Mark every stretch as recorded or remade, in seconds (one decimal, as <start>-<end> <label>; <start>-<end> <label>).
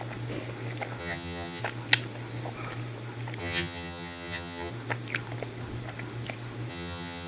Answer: 0.0-1.0 recorded; 1.0-1.6 remade; 1.6-3.4 recorded; 3.4-4.7 remade; 4.7-6.7 recorded; 6.7-7.3 remade